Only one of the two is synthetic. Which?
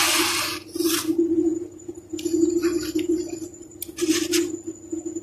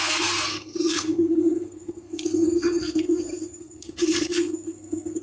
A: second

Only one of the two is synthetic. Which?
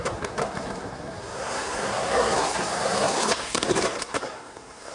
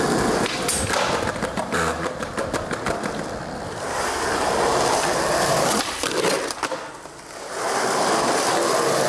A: first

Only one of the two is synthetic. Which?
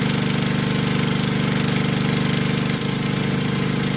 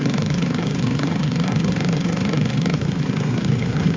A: second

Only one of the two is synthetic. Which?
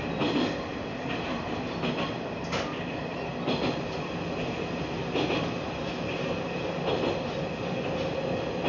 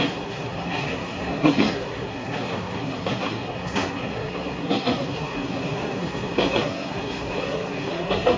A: second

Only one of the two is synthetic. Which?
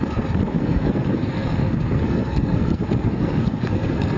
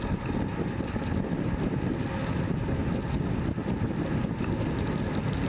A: first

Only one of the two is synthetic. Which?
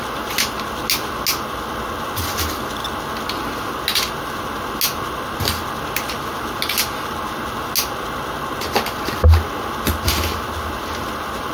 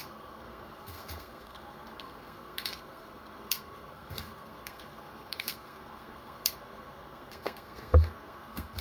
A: second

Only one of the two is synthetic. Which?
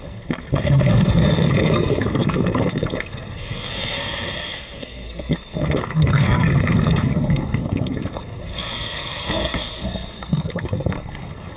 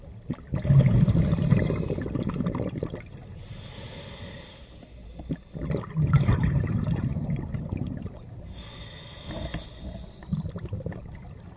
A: first